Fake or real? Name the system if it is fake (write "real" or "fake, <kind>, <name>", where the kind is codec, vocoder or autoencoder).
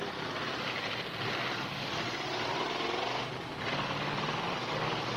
real